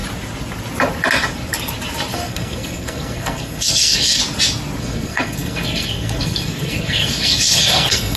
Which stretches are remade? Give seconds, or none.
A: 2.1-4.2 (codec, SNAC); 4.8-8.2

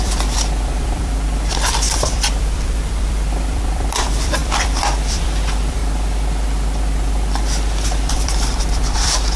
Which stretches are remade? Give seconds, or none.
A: 0.0-5.8 (vocoder, BigVGAN v2); 8.1-9.4

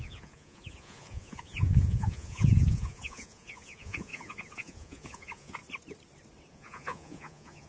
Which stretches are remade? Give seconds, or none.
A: 0.0-5.6 (vocoder, Vocos); 6.5-7.7

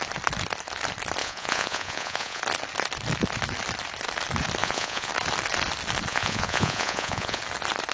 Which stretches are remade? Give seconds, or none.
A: 1.2-2.4 (vocoder, Vocos); 4.6-5.1; 6.1-7.4

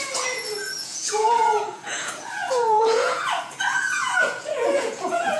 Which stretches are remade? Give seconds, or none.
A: 0.0-5.4 (vocoder, Vocos)

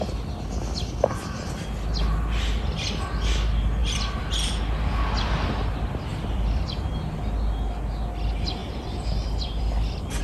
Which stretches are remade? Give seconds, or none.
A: 3.8-4.5 (vocoder, BigVGAN v2); 6.1-7.2; 8.6-10.2